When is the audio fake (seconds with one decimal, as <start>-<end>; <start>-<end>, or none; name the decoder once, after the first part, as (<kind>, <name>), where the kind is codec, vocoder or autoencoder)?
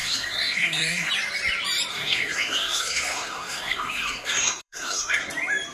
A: 0.0-1.1 (codec, SNAC); 1.9-5.3